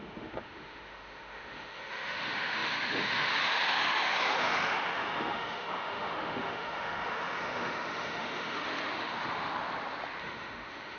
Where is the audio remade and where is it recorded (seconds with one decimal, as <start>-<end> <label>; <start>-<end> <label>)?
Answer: 0.0-9.5 remade; 9.5-10.2 recorded; 10.2-11.0 remade